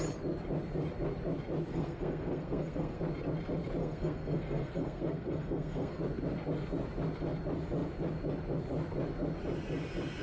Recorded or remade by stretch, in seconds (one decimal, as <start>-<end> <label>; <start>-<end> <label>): 0.0-1.7 recorded; 1.7-3.0 remade; 3.0-3.8 recorded; 3.8-6.0 remade; 6.0-10.2 recorded